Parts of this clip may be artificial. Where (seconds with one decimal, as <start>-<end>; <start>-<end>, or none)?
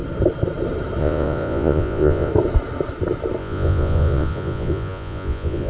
1.0-2.3; 3.4-5.7